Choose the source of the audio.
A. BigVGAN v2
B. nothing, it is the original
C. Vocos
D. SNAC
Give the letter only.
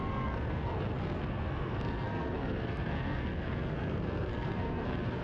D